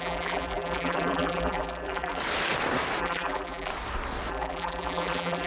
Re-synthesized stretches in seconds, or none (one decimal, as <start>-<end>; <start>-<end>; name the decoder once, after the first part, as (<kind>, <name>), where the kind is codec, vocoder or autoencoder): 0.0-2.2 (vocoder, BigVGAN v2); 3.0-3.7; 4.3-5.5

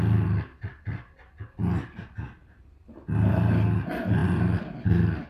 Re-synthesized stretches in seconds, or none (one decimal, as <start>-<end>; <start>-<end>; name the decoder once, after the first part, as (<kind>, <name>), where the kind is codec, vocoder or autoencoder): none

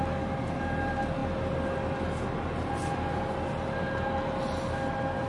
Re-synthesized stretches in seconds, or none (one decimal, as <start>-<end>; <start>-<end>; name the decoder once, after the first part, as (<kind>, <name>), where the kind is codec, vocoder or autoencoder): none

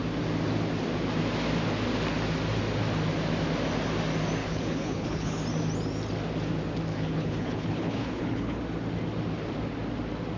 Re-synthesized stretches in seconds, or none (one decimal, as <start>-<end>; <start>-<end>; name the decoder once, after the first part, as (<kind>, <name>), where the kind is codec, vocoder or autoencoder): 4.4-5.4 (codec, HILCodec); 6.9-8.6